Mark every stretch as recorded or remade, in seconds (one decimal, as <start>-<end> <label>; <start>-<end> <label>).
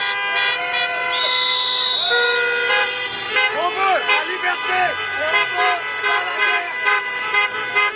0.0-8.0 recorded